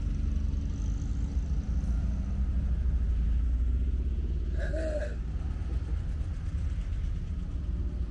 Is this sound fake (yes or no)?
no